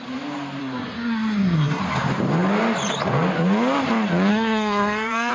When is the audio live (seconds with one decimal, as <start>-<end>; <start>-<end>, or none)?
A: 0.0-0.6; 1.8-4.3